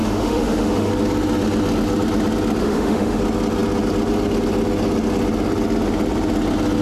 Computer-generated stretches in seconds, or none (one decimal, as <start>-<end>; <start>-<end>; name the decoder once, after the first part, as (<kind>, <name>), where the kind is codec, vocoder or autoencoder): 0.0-0.9 (autoencoder, DAC-VAE); 2.6-3.2